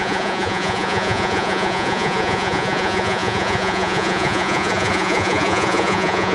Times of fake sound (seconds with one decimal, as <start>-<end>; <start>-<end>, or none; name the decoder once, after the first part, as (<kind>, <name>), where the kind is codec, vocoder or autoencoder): 0.0-6.3 (vocoder, Vocos)